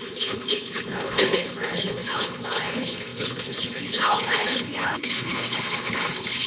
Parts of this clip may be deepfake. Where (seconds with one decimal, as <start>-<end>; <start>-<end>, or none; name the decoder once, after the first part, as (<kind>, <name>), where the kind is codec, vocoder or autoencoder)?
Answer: 0.0-6.5 (codec, HILCodec)